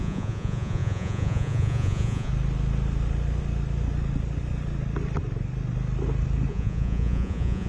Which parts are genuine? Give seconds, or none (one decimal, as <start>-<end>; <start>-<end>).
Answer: 2.3-6.5